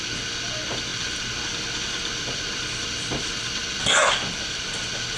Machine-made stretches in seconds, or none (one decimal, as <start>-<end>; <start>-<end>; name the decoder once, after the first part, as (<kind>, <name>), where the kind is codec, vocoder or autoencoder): none